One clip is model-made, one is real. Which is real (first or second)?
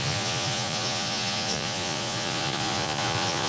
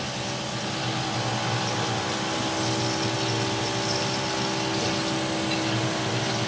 second